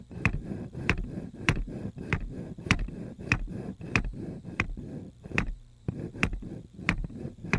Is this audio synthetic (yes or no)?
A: yes